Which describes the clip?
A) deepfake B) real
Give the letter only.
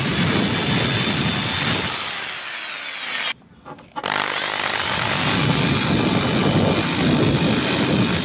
B